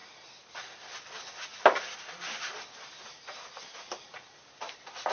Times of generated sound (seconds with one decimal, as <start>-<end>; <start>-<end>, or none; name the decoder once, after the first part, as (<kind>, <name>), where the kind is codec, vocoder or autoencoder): none